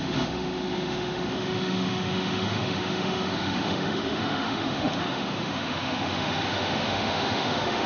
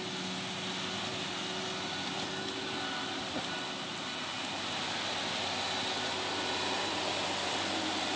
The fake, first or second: first